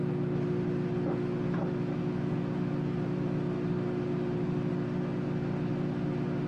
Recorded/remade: recorded